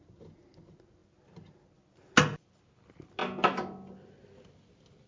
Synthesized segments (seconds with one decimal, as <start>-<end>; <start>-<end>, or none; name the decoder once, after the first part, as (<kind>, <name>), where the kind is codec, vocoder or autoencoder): none